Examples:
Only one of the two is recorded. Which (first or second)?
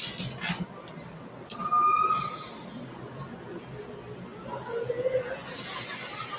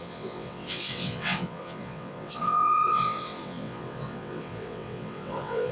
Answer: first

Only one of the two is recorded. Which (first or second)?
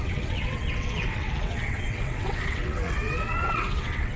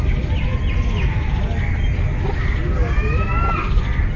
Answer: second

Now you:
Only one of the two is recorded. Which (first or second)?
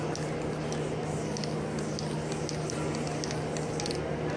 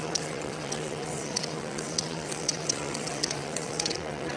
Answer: first